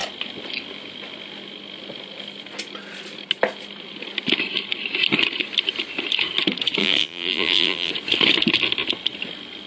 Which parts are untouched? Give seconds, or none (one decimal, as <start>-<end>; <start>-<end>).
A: 0.0-6.8; 7.9-9.7